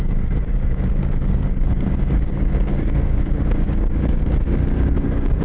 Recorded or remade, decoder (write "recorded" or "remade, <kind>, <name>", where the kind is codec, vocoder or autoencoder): remade, codec, DAC